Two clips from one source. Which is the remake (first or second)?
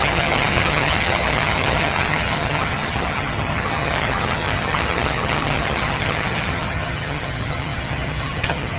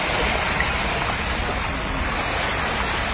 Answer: first